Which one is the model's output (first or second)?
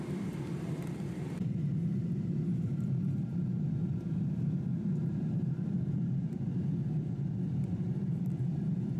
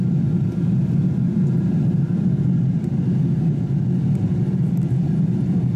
first